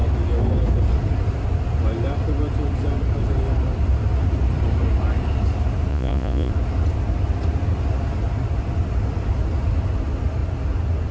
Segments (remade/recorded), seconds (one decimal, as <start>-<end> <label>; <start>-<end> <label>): 0.0-5.9 recorded; 5.9-6.5 remade; 6.5-11.1 recorded